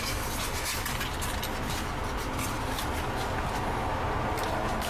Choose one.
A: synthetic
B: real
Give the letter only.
B